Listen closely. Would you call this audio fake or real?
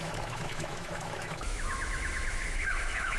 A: fake